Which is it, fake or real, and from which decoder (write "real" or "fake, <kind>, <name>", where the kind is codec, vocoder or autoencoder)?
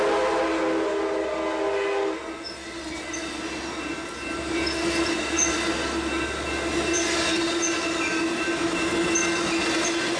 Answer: real